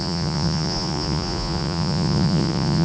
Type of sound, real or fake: fake